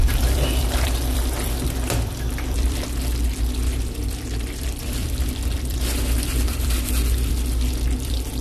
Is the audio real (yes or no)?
no